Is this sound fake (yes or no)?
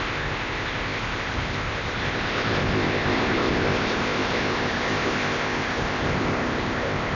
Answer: yes